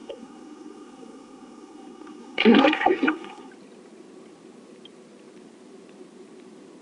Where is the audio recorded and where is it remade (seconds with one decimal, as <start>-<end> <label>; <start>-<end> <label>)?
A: 0.0-3.5 remade; 3.5-6.8 recorded